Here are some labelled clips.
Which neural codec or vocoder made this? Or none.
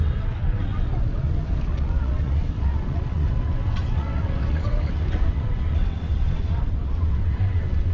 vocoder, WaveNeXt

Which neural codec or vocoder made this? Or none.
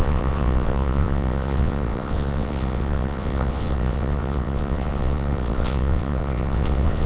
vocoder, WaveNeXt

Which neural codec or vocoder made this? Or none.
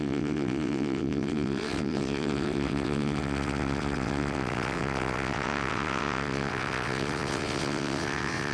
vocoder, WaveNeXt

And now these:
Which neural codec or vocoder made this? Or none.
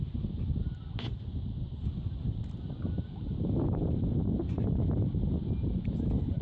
none